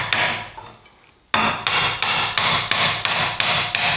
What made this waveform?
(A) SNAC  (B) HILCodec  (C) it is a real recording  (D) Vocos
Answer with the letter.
C